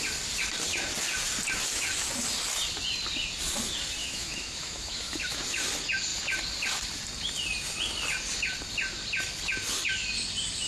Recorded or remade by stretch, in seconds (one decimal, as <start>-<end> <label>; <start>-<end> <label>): 0.0-4.0 recorded; 4.0-5.4 remade; 5.4-10.7 recorded